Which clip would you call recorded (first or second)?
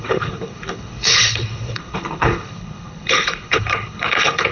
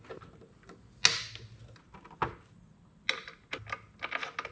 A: second